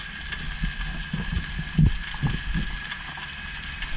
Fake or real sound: real